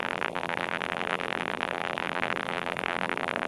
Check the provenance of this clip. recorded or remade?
remade